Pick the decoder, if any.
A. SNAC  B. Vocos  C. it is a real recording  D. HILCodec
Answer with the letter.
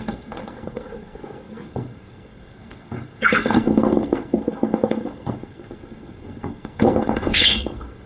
A